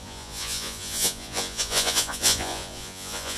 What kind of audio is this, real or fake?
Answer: fake